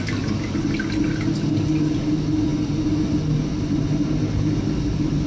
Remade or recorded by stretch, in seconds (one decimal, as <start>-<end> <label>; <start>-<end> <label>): 0.0-5.3 recorded